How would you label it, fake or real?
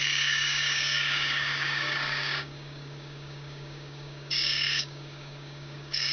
fake